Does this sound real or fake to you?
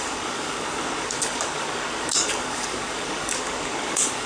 fake